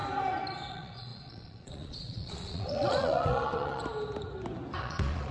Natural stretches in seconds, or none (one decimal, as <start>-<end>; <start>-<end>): 0.0-0.7; 3.8-4.8